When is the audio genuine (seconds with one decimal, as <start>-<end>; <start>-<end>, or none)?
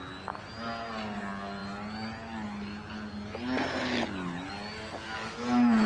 0.0-5.9